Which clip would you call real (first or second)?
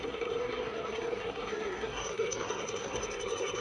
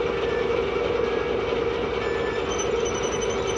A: second